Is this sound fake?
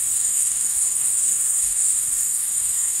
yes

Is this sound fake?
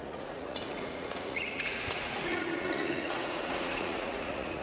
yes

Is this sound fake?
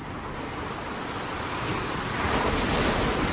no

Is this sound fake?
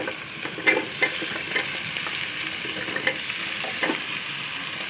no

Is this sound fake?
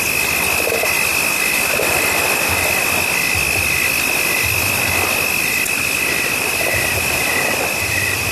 no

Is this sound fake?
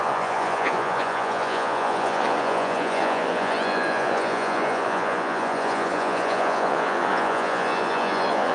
yes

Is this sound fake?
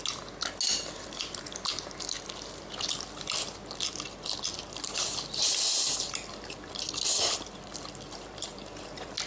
no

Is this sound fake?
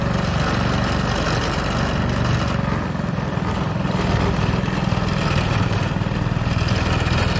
no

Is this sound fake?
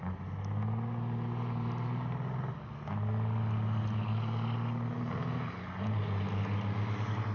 no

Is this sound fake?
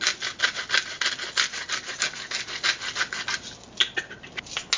no